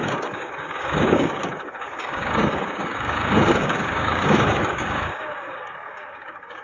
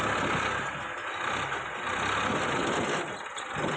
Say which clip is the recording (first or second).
second